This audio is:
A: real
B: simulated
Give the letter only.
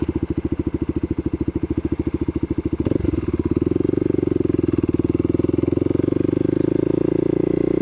A